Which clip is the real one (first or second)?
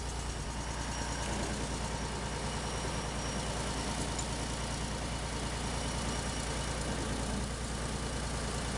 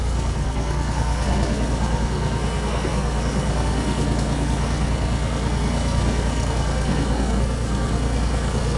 first